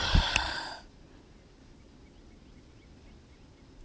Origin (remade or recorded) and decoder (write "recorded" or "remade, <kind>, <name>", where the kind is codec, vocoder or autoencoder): recorded